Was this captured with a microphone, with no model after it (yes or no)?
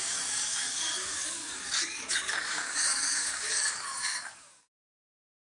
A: no